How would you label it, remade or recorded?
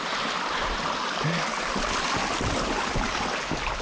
recorded